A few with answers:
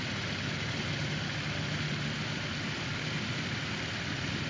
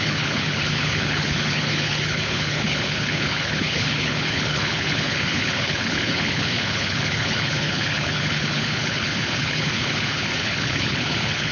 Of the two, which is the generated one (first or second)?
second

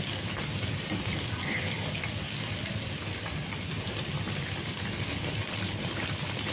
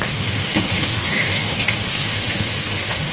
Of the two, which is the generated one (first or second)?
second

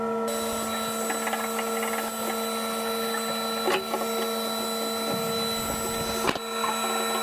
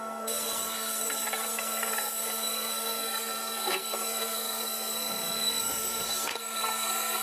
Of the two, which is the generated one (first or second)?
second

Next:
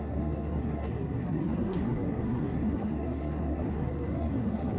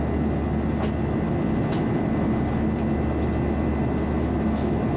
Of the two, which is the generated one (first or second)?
first